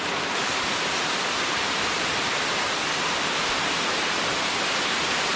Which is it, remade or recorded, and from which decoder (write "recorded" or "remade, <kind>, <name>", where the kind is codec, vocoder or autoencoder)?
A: recorded